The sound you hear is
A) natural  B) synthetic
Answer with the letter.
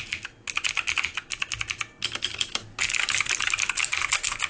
A